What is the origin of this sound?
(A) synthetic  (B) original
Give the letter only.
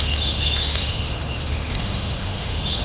A